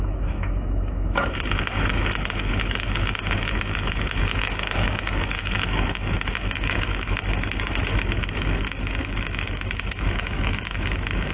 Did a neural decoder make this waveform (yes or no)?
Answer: yes